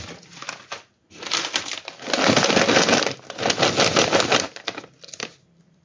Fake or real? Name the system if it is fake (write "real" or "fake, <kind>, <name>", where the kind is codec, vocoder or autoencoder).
real